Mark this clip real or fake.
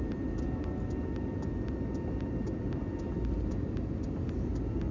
real